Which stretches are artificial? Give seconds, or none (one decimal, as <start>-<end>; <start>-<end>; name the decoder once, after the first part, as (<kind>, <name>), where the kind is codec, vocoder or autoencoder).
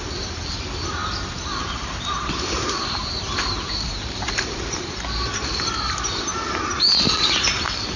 0.0-6.3 (vocoder, BigVGAN v2); 7.0-8.0